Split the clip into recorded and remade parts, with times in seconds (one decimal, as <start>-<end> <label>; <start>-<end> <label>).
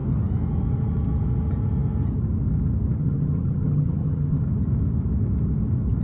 0.0-3.0 recorded; 3.0-4.4 remade; 4.4-6.0 recorded